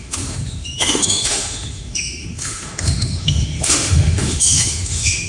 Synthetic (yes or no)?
yes